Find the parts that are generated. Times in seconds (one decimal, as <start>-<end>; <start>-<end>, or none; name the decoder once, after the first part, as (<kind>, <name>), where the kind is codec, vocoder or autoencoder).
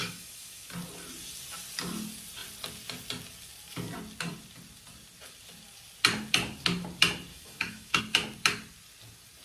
0.0-0.6 (autoencoder, DAC-VAE); 7.3-8.0